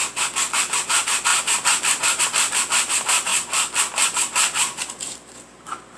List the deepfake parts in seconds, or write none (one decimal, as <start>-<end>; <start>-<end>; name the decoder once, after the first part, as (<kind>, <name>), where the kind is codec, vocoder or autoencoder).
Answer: 0.6-3.3 (vocoder, BigVGAN v2)